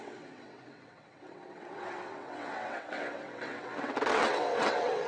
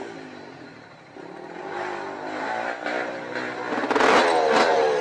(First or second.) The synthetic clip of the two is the first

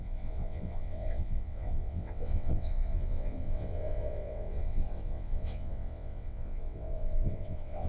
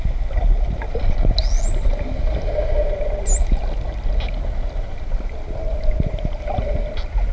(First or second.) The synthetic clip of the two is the first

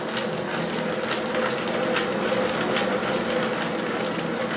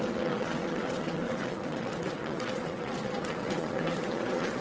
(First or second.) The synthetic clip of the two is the second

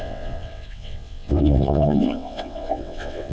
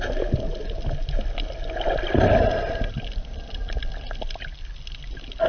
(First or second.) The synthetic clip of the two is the first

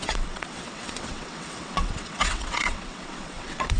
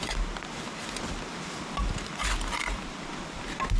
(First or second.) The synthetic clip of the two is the first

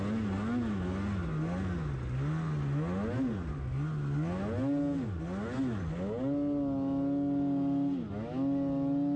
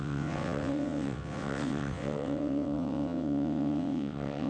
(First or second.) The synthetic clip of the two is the second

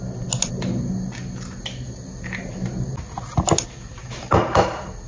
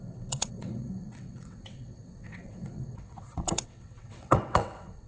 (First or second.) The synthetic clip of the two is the second